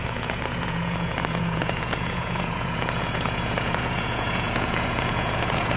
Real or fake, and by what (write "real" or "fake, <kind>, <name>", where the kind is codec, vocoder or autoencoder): fake, vocoder, Vocos